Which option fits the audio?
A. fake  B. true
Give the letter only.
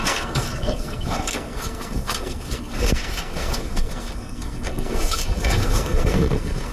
A